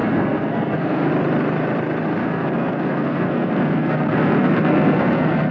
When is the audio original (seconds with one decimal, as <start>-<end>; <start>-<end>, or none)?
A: 1.1-2.2